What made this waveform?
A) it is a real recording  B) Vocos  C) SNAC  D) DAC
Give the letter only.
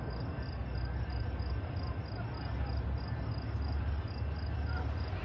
A